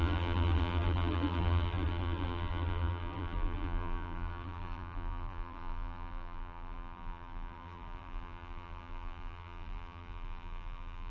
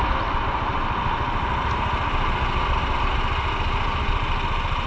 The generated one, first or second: first